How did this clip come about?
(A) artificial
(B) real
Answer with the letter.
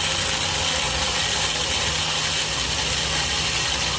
B